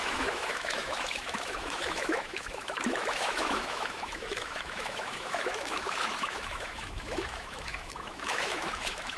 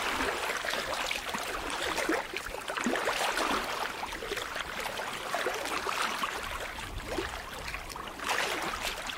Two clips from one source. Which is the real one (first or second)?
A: second